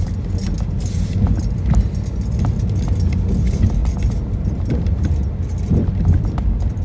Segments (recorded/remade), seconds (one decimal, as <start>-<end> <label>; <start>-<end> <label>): 0.0-6.8 recorded